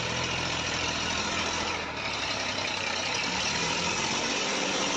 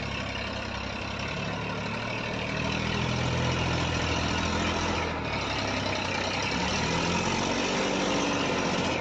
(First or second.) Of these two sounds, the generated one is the first